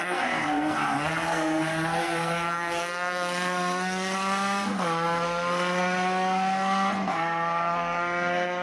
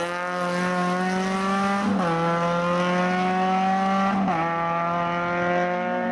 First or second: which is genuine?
second